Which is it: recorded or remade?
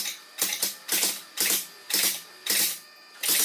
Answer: recorded